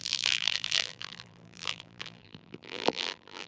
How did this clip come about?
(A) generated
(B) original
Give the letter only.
A